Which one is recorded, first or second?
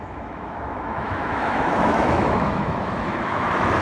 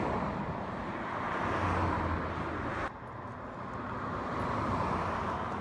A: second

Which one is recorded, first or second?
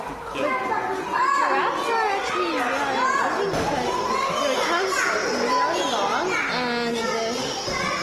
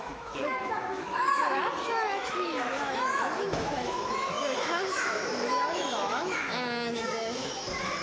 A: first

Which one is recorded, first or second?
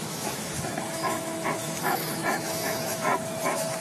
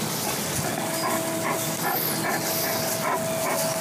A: second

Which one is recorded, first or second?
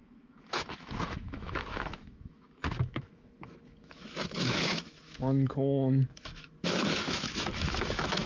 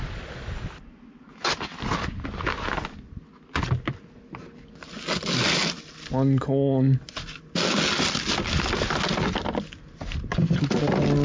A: second